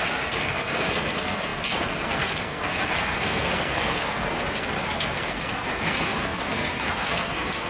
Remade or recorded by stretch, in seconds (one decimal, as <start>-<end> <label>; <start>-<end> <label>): 0.0-7.7 remade